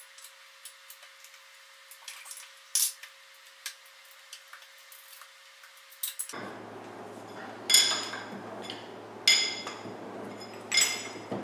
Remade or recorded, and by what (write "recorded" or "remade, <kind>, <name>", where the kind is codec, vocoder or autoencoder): recorded